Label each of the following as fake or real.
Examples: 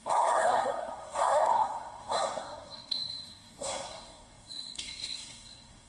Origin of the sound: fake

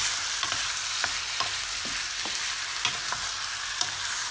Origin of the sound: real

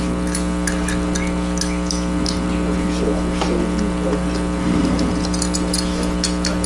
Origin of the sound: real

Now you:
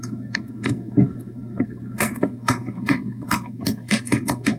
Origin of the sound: fake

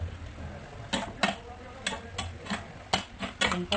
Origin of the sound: real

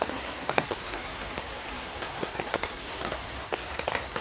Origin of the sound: fake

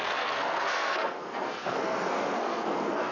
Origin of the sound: fake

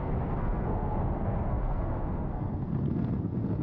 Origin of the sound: fake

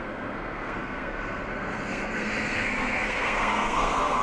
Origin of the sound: fake